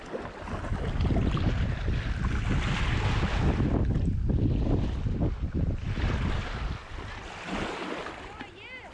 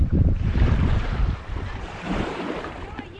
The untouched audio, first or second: first